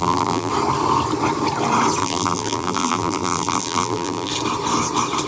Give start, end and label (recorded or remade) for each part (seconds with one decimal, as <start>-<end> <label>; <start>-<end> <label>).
0.0-0.5 remade; 0.5-2.0 recorded; 2.0-4.3 remade; 4.3-5.3 recorded